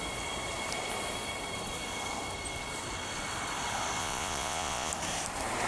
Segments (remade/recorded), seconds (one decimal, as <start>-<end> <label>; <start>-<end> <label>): 0.0-4.0 recorded; 4.0-4.9 remade; 4.9-5.7 recorded